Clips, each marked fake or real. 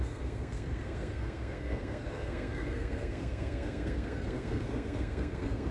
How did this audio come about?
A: fake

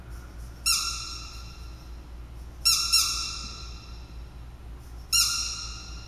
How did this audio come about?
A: real